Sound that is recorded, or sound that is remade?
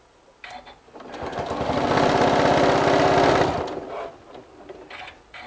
recorded